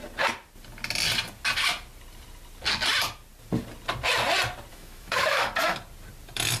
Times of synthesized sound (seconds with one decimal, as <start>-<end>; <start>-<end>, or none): 4.7-5.5